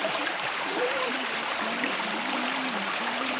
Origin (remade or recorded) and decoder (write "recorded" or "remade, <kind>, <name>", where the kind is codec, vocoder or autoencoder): remade, vocoder, BigVGAN v2